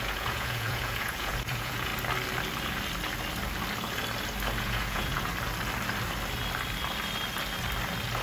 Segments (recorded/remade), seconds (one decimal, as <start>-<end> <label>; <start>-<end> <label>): 0.0-1.9 remade; 1.9-4.6 recorded; 4.6-5.3 remade; 5.3-8.2 recorded